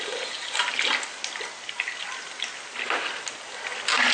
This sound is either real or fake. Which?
real